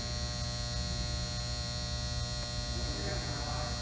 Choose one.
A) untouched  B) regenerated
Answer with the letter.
A